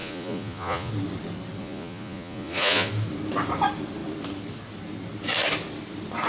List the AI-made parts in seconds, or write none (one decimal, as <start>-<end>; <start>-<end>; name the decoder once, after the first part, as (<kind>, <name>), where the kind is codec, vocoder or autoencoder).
0.0-0.9 (vocoder, Vocos); 1.6-2.9